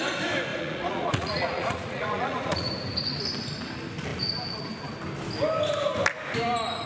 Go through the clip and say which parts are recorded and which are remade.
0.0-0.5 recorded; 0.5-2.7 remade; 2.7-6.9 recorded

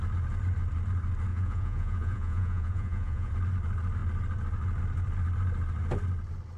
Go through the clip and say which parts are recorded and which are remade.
0.0-1.3 recorded; 1.3-3.3 remade; 3.3-6.6 recorded

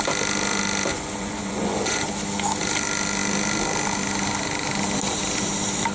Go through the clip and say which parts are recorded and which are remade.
0.0-0.9 recorded; 0.9-2.0 remade; 2.0-5.9 recorded

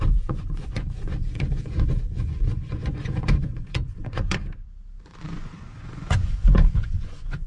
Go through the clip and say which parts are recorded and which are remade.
0.0-4.4 remade; 4.4-5.0 recorded; 5.0-7.5 remade

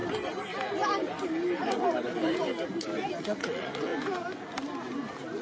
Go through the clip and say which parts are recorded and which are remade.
0.0-3.2 recorded; 3.2-3.9 remade; 3.9-5.4 recorded

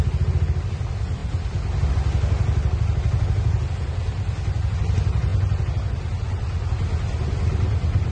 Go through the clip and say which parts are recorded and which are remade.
0.0-8.1 recorded